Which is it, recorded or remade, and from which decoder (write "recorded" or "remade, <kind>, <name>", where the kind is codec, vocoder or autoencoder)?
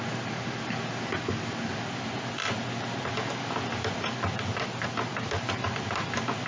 remade, vocoder, BigVGAN v2